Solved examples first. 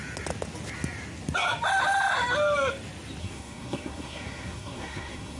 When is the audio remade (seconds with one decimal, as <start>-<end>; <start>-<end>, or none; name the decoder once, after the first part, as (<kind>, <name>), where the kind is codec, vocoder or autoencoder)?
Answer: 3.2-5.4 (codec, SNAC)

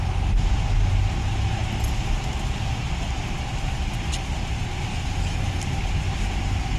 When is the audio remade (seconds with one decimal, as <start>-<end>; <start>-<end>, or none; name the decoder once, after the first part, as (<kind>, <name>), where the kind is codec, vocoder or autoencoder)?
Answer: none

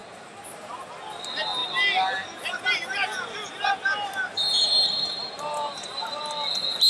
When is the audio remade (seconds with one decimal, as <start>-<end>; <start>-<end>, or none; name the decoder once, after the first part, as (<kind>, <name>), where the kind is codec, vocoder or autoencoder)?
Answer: 0.0-0.9 (vocoder, BigVGAN v2); 4.3-6.2

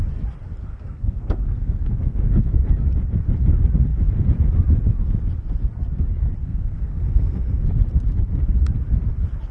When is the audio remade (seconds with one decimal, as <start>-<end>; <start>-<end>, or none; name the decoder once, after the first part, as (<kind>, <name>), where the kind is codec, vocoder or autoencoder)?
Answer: 0.7-2.5 (codec, SNAC); 6.4-7.7